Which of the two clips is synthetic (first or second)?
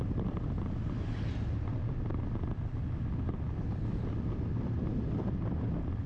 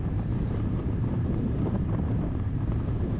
second